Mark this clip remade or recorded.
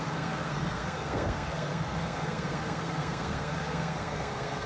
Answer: remade